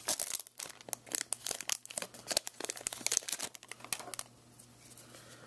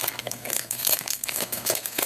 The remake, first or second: second